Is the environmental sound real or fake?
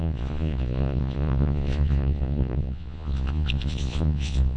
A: fake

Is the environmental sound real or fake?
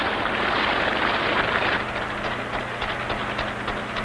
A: real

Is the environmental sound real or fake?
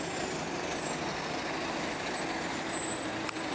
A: real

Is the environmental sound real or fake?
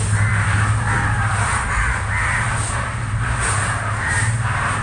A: real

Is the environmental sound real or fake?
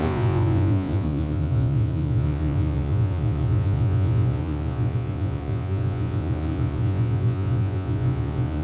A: fake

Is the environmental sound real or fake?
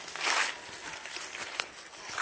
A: real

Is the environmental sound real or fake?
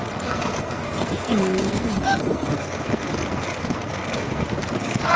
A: fake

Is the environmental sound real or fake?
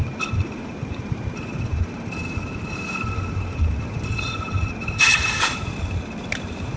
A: fake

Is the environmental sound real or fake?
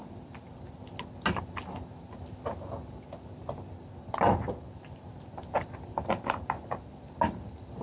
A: real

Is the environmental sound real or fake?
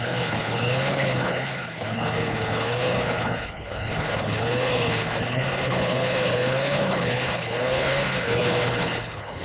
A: fake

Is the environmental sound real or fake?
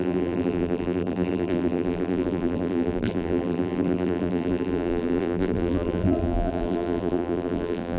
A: fake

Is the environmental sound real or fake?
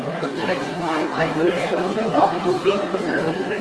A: fake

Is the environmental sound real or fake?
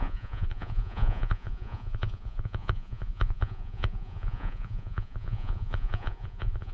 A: fake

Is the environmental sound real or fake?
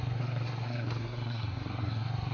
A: fake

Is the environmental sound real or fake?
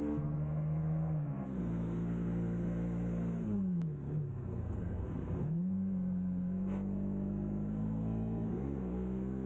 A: fake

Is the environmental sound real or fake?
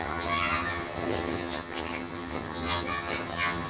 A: fake